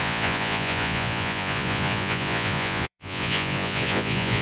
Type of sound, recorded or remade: remade